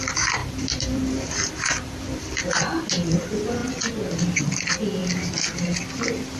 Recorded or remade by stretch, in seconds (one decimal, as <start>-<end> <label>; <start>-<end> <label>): 0.0-0.4 recorded; 0.4-2.4 remade; 2.4-6.4 recorded